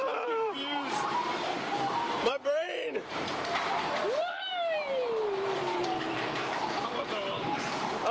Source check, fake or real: fake